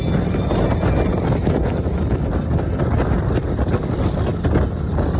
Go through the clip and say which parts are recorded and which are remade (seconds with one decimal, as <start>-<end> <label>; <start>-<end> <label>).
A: 0.0-5.2 recorded